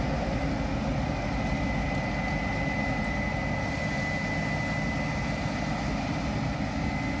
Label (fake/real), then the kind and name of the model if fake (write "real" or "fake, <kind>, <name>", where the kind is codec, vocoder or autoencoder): real